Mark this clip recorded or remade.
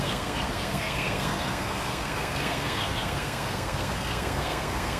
remade